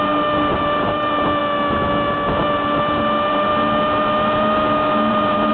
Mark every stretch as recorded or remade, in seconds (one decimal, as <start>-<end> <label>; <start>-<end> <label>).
0.0-1.4 remade; 1.4-2.8 recorded; 2.8-3.5 remade; 3.5-5.1 recorded; 5.1-5.5 remade